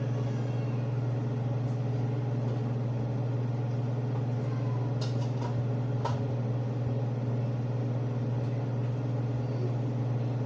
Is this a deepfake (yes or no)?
no